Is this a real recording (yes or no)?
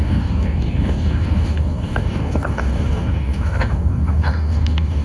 no